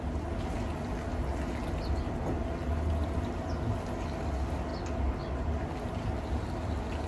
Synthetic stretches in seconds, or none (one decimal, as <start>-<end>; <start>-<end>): none